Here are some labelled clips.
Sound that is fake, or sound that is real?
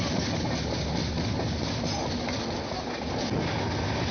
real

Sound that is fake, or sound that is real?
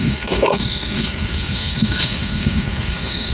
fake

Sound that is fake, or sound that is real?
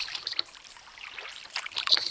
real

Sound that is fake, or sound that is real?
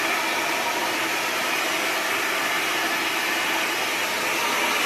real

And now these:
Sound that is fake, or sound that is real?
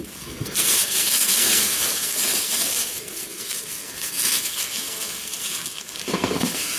fake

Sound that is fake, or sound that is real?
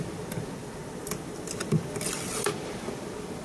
real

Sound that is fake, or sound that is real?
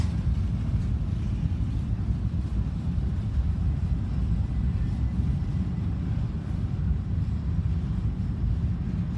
real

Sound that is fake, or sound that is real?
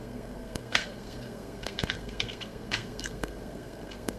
fake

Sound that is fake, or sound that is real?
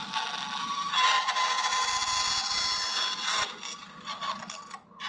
real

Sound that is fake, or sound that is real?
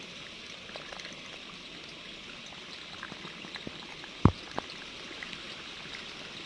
real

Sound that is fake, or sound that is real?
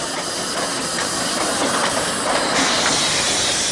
real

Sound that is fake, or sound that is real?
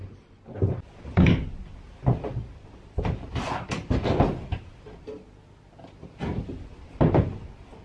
real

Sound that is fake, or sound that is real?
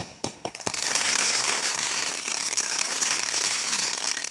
fake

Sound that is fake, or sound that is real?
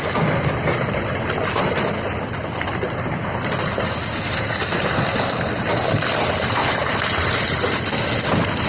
real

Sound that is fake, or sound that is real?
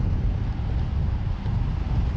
real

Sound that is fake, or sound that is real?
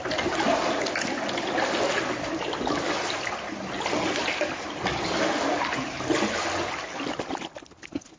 real